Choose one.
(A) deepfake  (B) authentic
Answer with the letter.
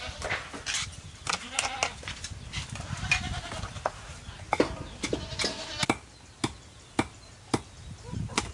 B